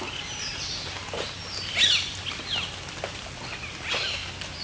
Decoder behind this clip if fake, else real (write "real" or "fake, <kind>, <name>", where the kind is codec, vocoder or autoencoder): real